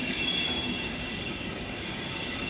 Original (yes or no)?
no